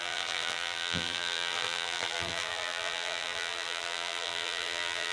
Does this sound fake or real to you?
fake